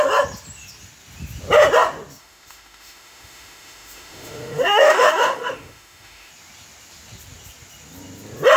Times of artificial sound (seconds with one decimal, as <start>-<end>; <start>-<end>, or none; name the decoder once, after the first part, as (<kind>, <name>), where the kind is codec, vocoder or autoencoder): 2.2-6.3 (autoencoder, DAC-VAE)